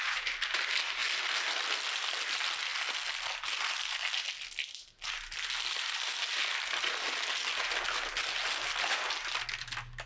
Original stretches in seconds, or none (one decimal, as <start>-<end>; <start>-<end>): 0.0-10.1